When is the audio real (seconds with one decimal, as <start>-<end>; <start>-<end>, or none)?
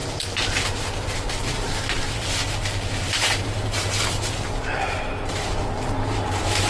none